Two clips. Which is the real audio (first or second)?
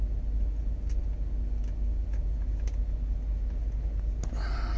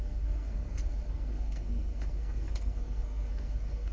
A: first